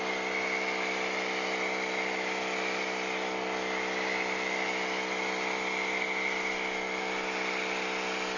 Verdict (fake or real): real